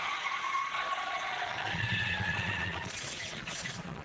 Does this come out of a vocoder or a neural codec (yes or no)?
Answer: yes